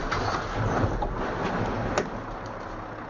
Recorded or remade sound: recorded